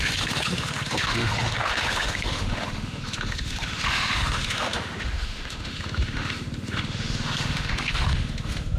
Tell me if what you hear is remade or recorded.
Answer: remade